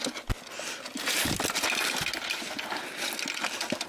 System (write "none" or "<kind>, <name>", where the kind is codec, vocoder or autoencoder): none